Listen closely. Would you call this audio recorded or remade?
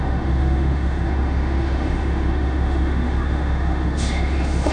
remade